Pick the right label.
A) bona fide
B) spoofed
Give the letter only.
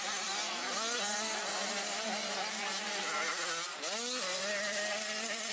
A